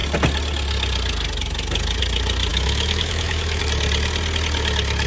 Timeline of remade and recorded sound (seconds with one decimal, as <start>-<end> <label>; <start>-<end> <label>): 0.0-2.5 recorded; 2.5-3.6 remade; 3.6-5.1 recorded